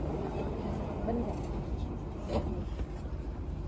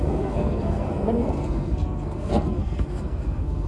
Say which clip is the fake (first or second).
second